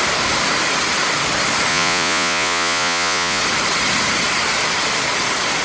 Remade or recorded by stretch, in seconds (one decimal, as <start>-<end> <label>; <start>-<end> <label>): 0.0-1.7 recorded; 1.7-3.4 remade; 3.4-5.6 recorded